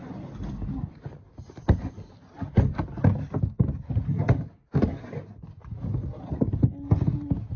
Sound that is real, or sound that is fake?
real